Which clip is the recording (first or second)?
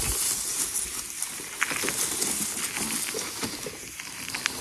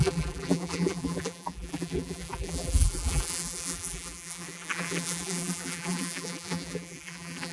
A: first